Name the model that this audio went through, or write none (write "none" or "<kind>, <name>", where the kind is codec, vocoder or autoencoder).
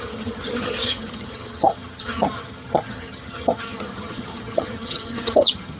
vocoder, HiFi-GAN